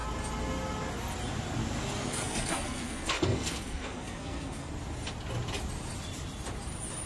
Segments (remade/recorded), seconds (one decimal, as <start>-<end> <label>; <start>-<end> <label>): 0.0-2.0 recorded; 2.0-4.7 remade; 4.7-7.1 recorded